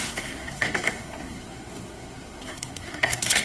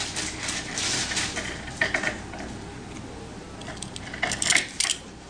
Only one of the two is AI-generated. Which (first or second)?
first